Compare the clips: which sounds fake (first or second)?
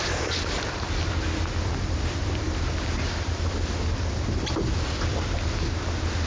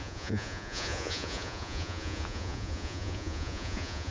second